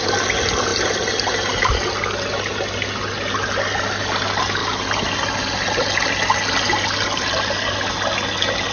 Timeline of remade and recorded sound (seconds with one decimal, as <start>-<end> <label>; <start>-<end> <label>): 0.0-8.7 recorded